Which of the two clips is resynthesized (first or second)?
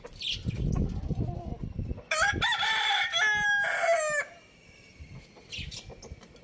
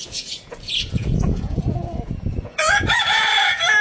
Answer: second